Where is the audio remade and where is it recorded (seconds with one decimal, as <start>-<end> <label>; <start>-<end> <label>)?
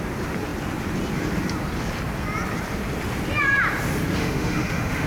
0.0-4.2 recorded; 4.2-5.1 remade